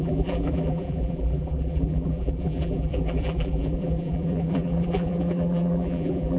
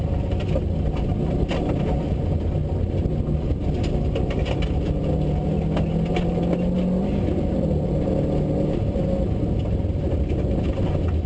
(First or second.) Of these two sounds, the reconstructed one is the first